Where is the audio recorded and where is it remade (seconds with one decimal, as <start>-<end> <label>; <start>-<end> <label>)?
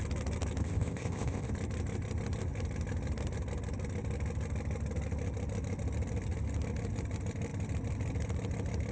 0.0-0.6 recorded; 0.6-1.5 remade; 1.5-8.9 recorded